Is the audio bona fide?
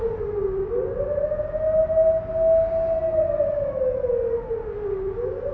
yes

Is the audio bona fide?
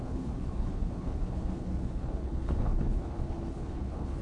no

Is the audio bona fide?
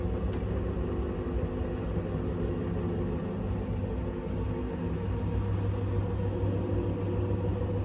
yes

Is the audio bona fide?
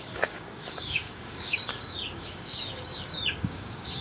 no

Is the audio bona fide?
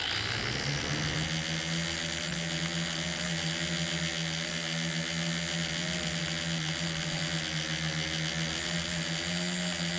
yes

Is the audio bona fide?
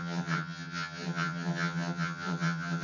no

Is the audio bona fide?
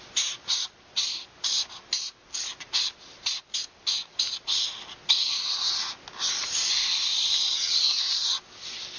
yes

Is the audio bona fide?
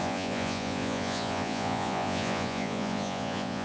no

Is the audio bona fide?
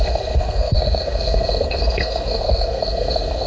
no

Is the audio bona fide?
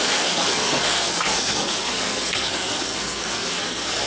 no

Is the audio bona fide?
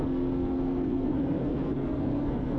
no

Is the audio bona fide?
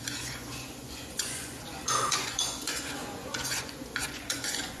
no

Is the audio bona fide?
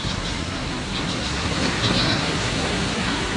no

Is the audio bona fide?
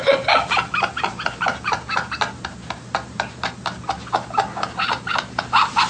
yes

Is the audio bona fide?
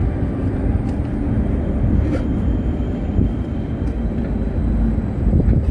yes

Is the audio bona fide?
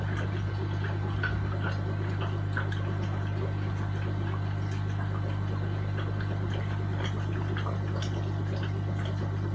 yes